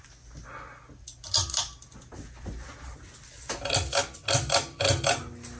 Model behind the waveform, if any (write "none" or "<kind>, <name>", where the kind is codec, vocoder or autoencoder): none